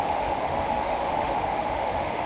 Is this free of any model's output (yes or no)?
no